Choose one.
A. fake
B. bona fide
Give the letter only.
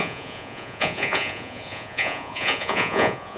A